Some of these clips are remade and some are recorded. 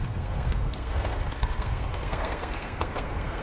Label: remade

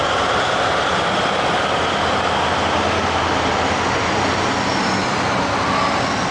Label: recorded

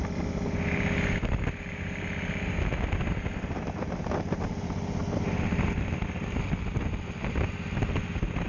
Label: recorded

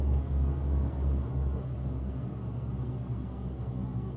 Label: remade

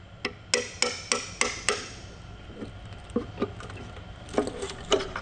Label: recorded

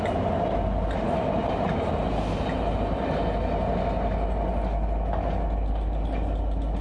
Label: recorded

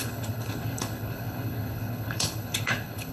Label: remade